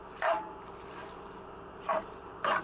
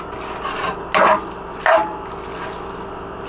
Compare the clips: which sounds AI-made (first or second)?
first